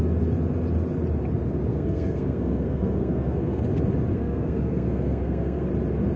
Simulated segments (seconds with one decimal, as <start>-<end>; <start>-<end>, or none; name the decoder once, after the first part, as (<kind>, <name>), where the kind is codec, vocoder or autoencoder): 1.7-3.6 (codec, SNAC); 4.1-5.7